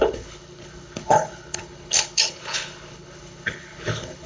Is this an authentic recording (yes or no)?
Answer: no